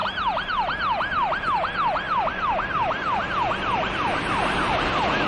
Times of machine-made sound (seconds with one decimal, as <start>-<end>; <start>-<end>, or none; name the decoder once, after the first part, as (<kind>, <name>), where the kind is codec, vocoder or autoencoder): 0.0-3.2 (vocoder, BigVGAN v2)